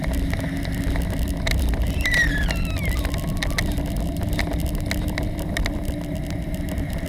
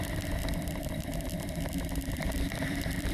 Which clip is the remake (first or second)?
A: second